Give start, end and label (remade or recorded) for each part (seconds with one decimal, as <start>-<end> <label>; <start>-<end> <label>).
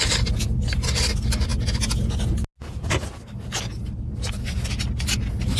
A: 0.0-5.6 recorded